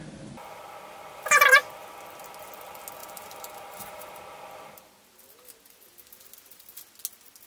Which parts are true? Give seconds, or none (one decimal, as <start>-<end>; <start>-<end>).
0.0-3.0; 4.2-7.5